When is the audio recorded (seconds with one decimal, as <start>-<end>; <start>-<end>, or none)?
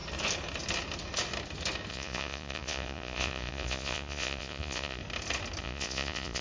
0.0-1.9; 5.0-5.6